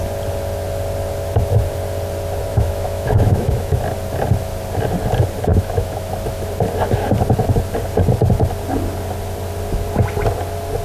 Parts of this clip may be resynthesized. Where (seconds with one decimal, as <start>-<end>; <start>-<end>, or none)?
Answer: 2.5-3.8; 5.5-6.1